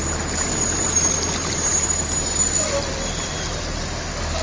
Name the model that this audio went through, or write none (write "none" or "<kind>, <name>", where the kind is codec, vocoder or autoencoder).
none